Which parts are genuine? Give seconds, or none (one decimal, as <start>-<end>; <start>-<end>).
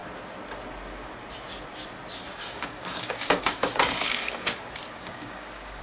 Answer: 0.0-2.3